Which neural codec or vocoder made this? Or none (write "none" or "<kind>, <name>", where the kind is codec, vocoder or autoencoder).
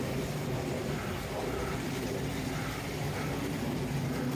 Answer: none